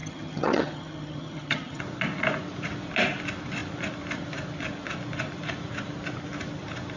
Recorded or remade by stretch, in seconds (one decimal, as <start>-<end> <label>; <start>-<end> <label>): 0.0-1.8 remade; 1.8-7.0 recorded